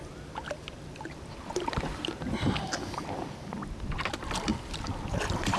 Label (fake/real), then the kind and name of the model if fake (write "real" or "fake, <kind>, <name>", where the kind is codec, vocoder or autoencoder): fake, vocoder, BigVGAN v2